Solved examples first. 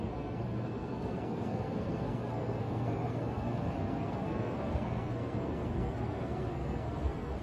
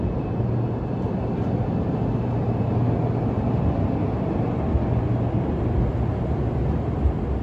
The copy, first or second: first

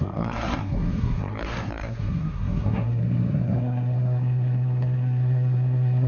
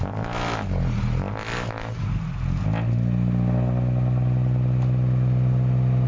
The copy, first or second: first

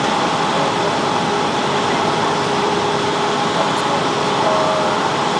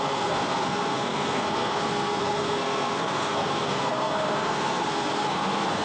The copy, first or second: second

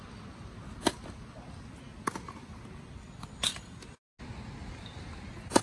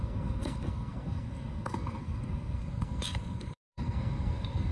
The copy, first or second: second